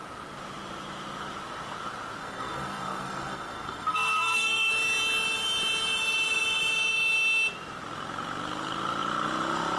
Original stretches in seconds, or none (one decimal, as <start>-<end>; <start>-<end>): 0.0-2.2; 4.7-9.8

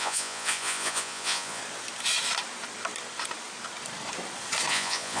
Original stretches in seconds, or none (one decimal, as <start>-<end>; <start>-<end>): 1.6-4.7

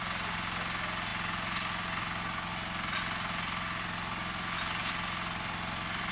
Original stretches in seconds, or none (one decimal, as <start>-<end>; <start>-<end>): 0.0-6.1